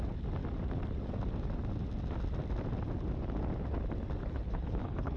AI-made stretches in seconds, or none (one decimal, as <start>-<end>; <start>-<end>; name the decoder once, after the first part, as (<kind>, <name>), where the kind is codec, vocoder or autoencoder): 4.2-5.2 (codec, HILCodec)